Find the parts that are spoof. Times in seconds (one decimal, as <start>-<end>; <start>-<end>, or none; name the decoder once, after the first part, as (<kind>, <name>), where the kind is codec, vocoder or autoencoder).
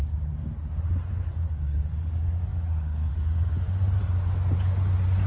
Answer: none